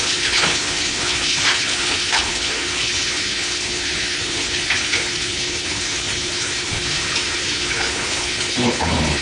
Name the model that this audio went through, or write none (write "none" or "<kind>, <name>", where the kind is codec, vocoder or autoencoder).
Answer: codec, HILCodec